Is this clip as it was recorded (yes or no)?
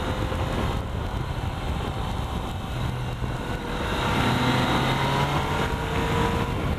yes